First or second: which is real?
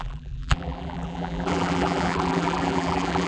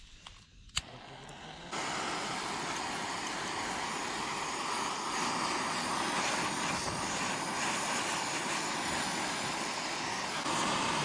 second